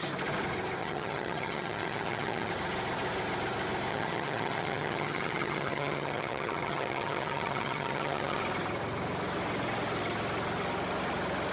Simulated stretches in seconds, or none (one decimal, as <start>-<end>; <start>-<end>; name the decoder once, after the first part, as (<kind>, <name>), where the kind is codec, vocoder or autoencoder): 0.8-2.5 (vocoder, HiFi-GAN); 3.9-8.4